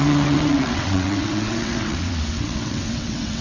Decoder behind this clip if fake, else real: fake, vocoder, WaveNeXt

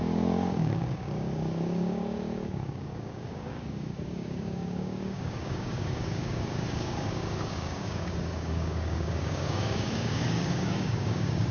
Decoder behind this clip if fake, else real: fake, codec, DAC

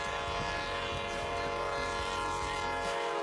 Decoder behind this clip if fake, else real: real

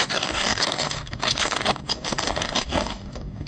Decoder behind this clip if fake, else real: fake, codec, DAC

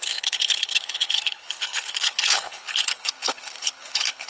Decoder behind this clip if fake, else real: fake, codec, HILCodec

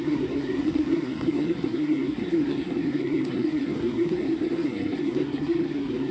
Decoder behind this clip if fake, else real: fake, codec, SNAC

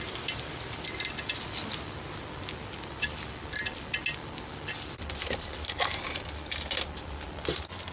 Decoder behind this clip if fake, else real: real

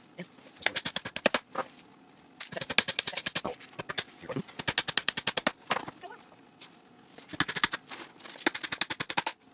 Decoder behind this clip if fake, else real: real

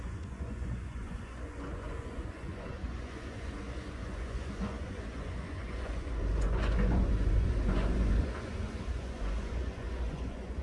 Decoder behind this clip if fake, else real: fake, vocoder, Vocos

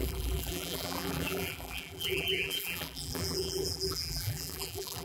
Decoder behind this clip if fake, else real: fake, vocoder, BigVGAN v2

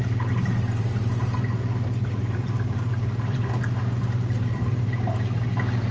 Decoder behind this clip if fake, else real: fake, vocoder, BigVGAN v2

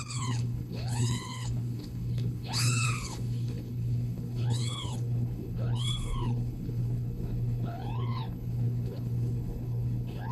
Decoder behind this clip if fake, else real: fake, codec, HILCodec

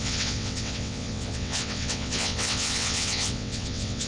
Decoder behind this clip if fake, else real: fake, vocoder, WaveNeXt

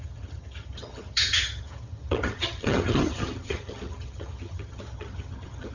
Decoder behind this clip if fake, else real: fake, vocoder, HiFi-GAN